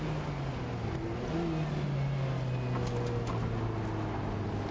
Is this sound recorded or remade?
recorded